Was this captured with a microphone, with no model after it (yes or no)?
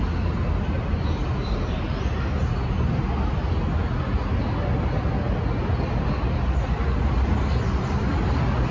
yes